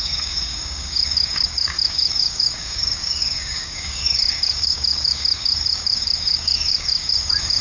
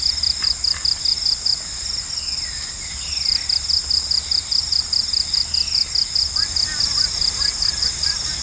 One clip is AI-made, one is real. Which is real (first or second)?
second